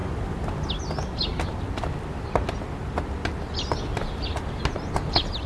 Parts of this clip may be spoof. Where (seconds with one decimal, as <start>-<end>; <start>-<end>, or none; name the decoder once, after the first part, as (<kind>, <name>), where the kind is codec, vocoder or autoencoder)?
none